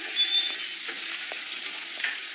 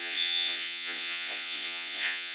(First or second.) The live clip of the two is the first